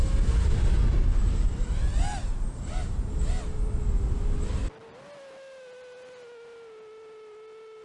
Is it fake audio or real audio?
real